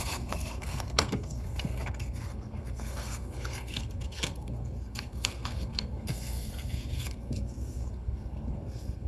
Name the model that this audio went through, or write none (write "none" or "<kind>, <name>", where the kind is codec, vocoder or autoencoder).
codec, SNAC